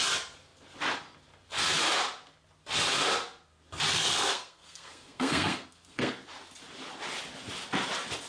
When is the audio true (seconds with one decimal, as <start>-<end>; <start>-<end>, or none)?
0.0-3.9; 6.1-8.3